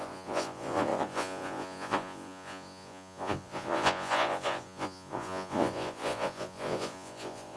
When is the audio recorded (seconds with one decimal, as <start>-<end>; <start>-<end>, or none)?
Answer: none